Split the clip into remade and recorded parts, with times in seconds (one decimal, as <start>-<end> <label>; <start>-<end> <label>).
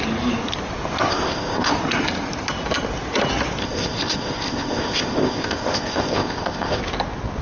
0.0-1.1 recorded; 1.1-1.7 remade; 1.7-3.6 recorded; 3.6-6.8 remade; 6.8-7.4 recorded